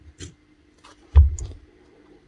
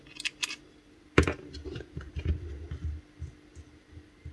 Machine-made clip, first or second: first